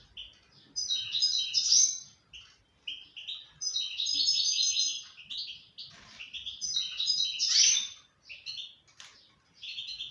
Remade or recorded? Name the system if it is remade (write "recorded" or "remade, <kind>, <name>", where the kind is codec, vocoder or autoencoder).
recorded